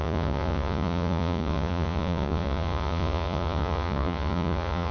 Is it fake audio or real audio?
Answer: fake